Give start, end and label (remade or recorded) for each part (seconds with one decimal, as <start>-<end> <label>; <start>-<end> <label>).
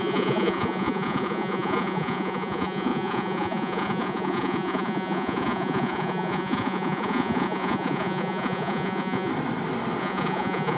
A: 0.0-9.3 remade; 9.3-10.0 recorded; 10.0-10.8 remade